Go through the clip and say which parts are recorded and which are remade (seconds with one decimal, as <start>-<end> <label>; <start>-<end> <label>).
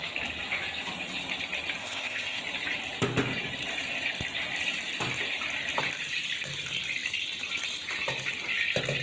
0.0-1.8 recorded; 1.8-2.4 remade; 2.4-9.0 recorded